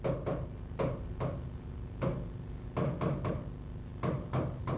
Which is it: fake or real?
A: real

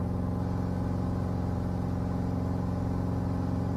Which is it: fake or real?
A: real